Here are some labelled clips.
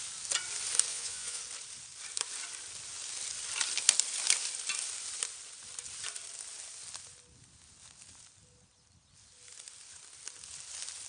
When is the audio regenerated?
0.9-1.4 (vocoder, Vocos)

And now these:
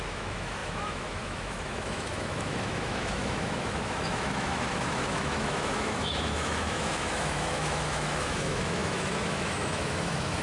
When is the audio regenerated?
0.0-10.4 (autoencoder, DAC-VAE)